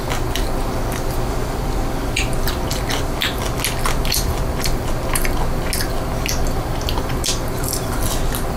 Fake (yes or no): no